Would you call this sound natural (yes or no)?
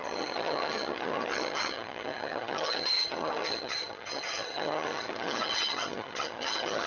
no